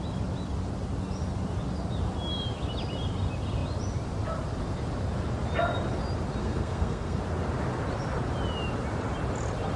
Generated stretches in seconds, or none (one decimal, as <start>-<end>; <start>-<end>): 6.4-7.2